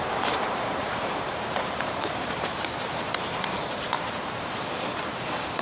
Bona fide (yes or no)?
no